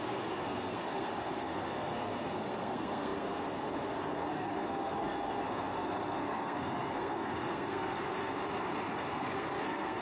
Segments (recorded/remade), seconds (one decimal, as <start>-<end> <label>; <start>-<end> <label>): 0.0-8.4 remade; 8.4-9.1 recorded; 9.1-10.0 remade